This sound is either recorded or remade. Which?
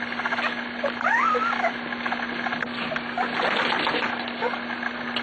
recorded